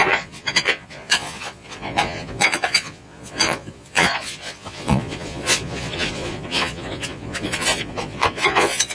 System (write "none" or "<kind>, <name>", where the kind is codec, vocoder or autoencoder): vocoder, Vocos